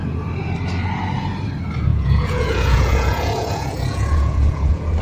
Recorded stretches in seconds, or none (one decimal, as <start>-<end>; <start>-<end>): 0.0-1.9